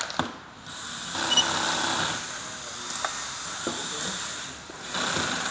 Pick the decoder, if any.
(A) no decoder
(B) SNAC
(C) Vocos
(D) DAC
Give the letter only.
A